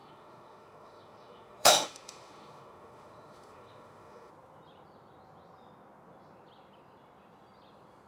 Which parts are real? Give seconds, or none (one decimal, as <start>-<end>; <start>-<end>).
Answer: 4.3-8.1